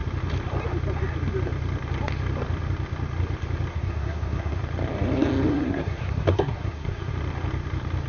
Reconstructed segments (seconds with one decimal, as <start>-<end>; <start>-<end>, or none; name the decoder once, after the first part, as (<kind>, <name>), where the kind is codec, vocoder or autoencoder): 3.7-4.6 (codec, SNAC); 5.5-7.1